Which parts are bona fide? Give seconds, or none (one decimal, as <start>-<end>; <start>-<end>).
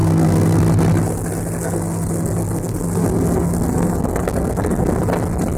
0.6-1.6; 5.0-5.6